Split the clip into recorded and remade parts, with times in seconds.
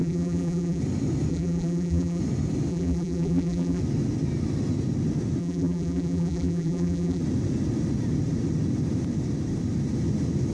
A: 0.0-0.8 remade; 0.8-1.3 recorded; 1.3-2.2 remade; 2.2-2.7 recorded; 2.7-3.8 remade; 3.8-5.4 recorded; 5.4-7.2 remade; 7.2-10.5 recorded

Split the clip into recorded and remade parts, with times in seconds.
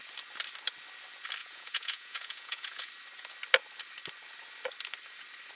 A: 0.0-1.4 recorded; 1.4-2.9 remade; 2.9-5.5 recorded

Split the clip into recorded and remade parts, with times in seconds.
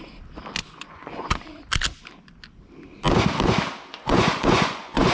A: 0.0-0.6 recorded; 0.6-1.6 remade; 1.6-3.9 recorded; 3.9-5.1 remade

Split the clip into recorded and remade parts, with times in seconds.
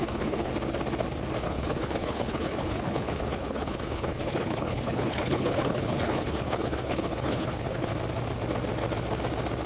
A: 0.0-0.5 remade; 0.5-1.4 recorded; 1.4-7.9 remade; 7.9-9.7 recorded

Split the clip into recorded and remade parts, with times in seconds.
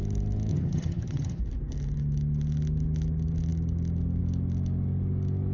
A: 0.0-0.5 recorded; 0.5-1.4 remade; 1.4-5.5 recorded